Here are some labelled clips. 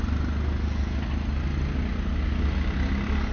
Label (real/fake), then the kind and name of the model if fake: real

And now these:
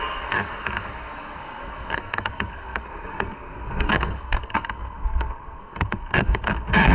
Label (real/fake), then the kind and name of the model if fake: fake, codec, SNAC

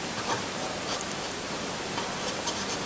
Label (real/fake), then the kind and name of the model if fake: fake, vocoder, BigVGAN v2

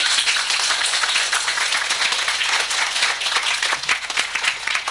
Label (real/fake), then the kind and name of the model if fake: fake, vocoder, Vocos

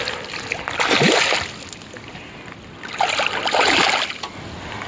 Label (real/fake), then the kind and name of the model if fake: real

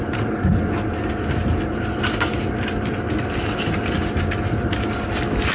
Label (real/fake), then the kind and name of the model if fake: real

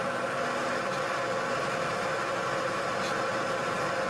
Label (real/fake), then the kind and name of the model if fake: real